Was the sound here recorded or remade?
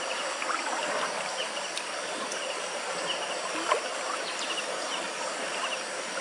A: recorded